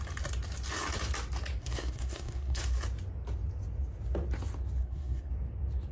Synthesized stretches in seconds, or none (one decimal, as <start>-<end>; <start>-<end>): 1.6-2.6; 4.8-5.3